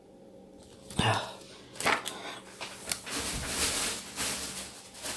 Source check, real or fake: real